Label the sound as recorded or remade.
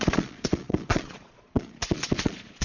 remade